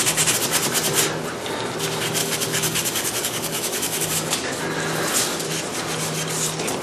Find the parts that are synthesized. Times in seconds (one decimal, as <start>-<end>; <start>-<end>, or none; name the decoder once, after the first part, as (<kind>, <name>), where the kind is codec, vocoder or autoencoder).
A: 2.2-4.6 (codec, DAC)